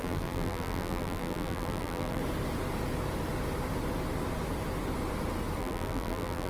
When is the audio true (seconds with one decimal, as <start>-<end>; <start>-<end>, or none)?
2.2-5.6